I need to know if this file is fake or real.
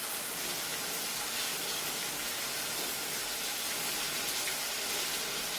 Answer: real